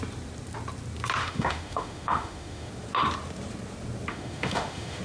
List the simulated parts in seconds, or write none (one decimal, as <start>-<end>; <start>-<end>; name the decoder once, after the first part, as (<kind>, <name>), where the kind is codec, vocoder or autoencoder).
1.2-2.7 (autoencoder, DAC-VAE); 4.1-5.0